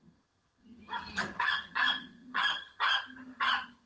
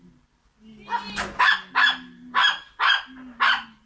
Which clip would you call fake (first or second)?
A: first